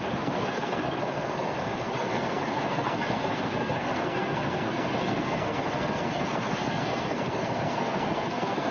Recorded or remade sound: remade